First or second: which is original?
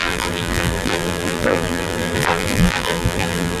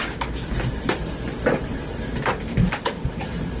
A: second